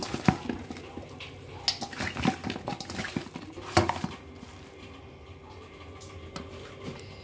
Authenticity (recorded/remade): recorded